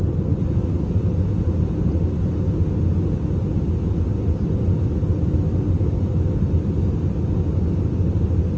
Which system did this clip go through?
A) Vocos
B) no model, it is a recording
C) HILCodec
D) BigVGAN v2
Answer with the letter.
B